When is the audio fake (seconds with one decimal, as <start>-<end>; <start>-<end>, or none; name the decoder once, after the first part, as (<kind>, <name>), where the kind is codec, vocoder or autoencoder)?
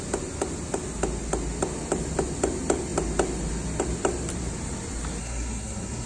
5.2-6.1 (codec, SNAC)